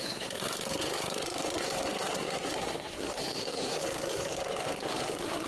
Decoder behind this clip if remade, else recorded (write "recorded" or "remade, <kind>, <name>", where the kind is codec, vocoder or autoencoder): remade, codec, SNAC